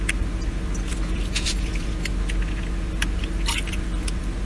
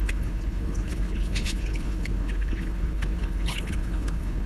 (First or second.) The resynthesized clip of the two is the second